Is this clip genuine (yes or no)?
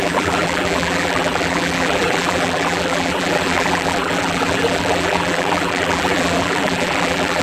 no